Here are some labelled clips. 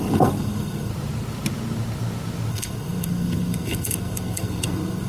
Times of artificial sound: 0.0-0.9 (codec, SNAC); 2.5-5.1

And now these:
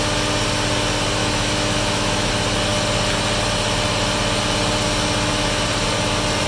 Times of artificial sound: 1.2-2.3 (autoencoder, DAC-VAE)